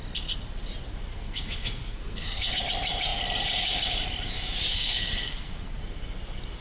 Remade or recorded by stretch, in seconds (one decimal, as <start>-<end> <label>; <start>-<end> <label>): 0.0-1.1 recorded; 1.1-2.6 remade; 2.6-4.7 recorded; 4.7-5.8 remade; 5.8-6.6 recorded

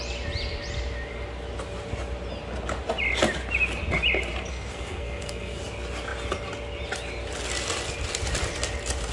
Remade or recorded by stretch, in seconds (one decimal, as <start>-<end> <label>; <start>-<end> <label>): 0.0-4.5 recorded; 4.5-5.6 remade; 5.6-9.1 recorded

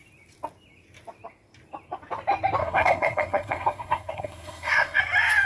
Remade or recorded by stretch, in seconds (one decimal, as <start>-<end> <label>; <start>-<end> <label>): 0.0-2.6 recorded; 2.6-5.0 remade; 5.0-5.5 recorded